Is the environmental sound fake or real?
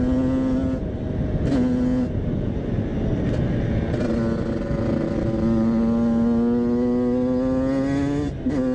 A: real